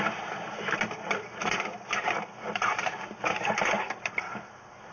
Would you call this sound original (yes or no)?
yes